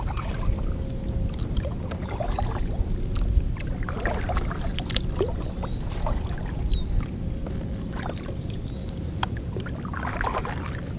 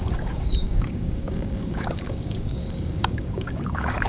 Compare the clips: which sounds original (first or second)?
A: first